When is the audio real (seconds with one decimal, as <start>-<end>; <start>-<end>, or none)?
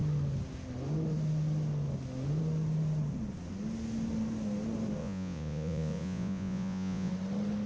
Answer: 0.0-5.0; 7.1-7.7